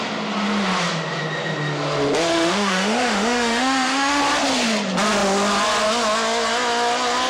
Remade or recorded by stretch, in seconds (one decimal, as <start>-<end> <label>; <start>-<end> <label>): 0.0-2.3 recorded; 2.3-4.2 remade; 4.2-7.3 recorded